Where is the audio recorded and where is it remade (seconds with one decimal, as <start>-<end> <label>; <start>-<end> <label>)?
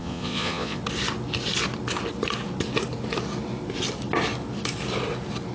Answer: 0.0-0.8 remade; 0.8-5.5 recorded